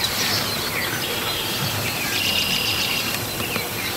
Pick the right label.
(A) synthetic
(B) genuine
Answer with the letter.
A